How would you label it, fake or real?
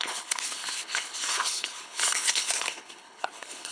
fake